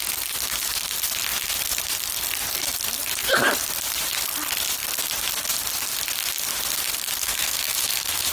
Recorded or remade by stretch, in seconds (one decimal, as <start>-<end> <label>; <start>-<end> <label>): 0.0-7.2 recorded; 7.2-8.3 remade